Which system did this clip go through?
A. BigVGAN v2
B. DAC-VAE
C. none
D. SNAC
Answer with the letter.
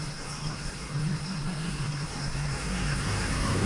D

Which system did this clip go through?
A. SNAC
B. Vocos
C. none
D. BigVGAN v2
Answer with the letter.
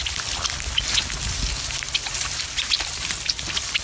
C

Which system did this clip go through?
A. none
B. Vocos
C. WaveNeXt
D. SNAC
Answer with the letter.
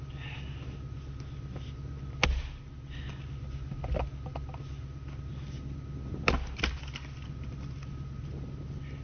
A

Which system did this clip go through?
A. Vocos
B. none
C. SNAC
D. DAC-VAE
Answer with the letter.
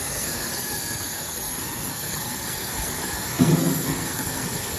C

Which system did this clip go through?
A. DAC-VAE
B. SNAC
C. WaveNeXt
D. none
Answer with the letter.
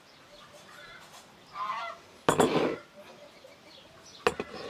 D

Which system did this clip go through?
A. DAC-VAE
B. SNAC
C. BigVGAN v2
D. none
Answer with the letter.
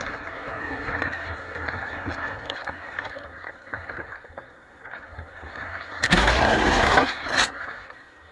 B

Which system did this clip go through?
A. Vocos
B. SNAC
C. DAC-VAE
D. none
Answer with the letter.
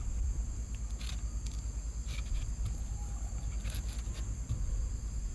D